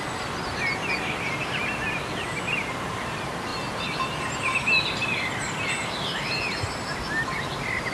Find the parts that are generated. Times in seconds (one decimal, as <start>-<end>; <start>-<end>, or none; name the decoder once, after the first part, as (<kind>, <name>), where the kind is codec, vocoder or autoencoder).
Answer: none